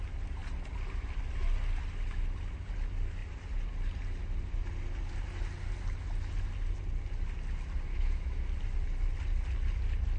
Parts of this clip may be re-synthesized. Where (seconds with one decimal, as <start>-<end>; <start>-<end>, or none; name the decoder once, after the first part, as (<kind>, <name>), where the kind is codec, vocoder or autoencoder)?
7.9-8.4 (autoencoder, DAC-VAE)